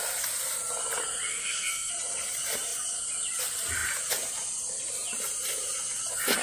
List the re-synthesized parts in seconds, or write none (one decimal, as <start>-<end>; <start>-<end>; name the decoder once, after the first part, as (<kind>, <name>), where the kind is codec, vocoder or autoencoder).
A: 1.3-1.9 (codec, SNAC)